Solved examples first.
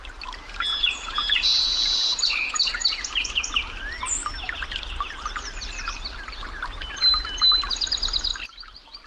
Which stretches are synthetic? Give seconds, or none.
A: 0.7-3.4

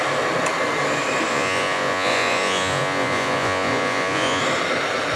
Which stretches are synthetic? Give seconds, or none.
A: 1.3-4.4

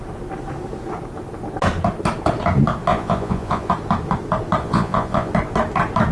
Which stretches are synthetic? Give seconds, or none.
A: 2.9-3.7; 4.6-5.3

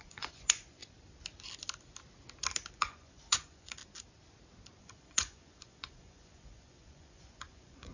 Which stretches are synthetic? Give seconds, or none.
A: 0.0-0.8; 2.7-3.8; 4.8-7.9

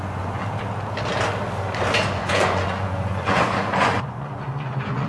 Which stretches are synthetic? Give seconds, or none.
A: 0.0-0.4; 2.1-5.1